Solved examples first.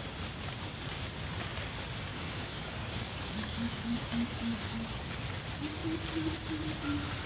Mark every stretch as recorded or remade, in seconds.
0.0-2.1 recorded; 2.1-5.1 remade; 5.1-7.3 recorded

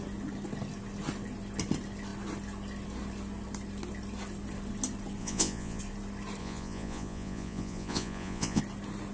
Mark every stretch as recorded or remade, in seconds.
0.0-5.2 recorded; 5.2-5.8 remade; 5.8-6.4 recorded; 6.4-8.6 remade; 8.6-9.1 recorded

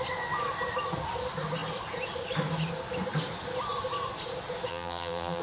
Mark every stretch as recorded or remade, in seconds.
0.0-4.7 recorded; 4.7-5.4 remade

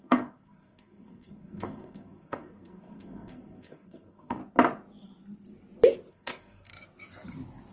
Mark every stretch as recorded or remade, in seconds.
0.0-4.4 remade; 4.4-6.1 recorded; 6.1-6.7 remade; 6.7-7.7 recorded

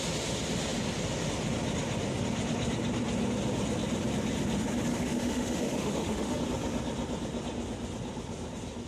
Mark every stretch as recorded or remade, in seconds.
0.0-4.9 recorded; 4.9-6.4 remade; 6.4-8.9 recorded

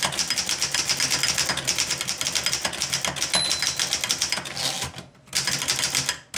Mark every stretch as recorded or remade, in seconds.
0.0-6.4 recorded

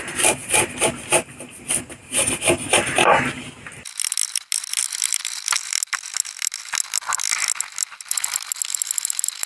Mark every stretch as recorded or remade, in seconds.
0.0-9.5 recorded